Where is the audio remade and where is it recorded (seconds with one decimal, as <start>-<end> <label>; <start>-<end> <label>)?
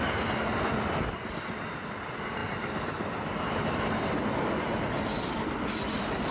0.0-6.3 recorded